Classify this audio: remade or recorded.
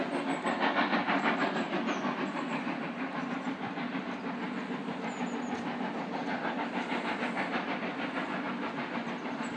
recorded